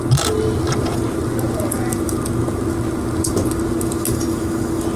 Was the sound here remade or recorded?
recorded